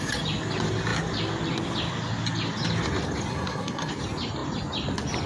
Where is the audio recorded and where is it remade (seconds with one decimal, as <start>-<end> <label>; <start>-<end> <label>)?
0.0-3.3 recorded; 3.3-3.9 remade; 3.9-5.3 recorded